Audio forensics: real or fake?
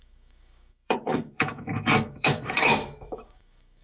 fake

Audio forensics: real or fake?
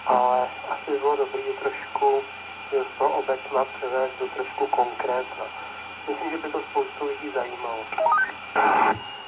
fake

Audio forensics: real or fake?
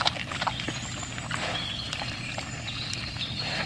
real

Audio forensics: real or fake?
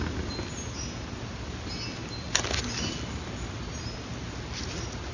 real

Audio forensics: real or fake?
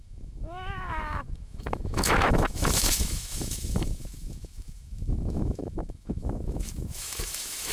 fake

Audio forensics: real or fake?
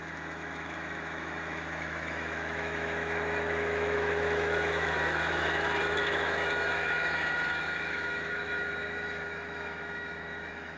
fake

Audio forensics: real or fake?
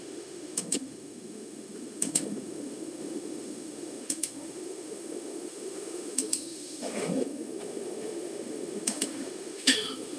fake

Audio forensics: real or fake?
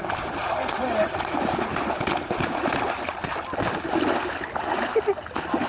real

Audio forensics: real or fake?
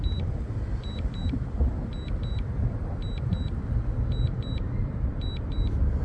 real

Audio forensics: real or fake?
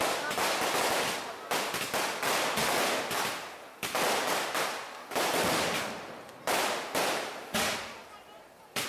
real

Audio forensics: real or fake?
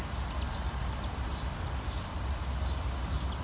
real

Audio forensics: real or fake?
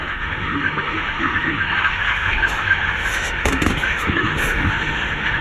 fake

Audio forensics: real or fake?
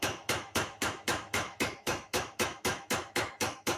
fake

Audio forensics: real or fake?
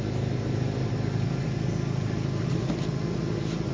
real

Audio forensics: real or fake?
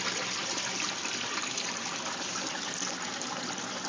real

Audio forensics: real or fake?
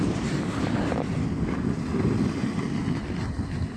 real